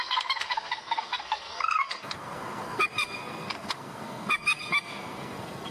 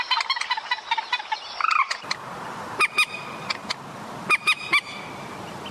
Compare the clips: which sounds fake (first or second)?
first